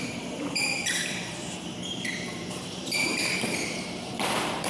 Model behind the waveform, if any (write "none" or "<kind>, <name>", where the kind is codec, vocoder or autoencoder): vocoder, BigVGAN v2